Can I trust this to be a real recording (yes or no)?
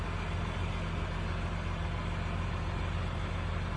yes